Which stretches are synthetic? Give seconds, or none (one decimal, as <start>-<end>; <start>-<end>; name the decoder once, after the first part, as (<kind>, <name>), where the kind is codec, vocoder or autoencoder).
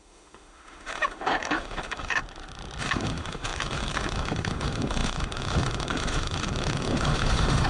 0.0-2.2 (autoencoder, DAC-VAE); 2.8-7.7